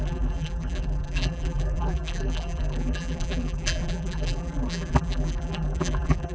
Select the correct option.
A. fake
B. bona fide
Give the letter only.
A